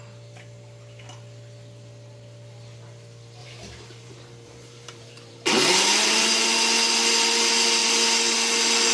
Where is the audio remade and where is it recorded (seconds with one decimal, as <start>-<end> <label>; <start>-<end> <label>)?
0.0-3.4 recorded; 3.4-5.5 remade; 5.5-8.9 recorded